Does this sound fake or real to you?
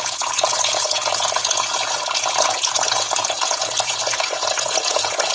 fake